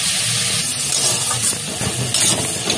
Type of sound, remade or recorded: recorded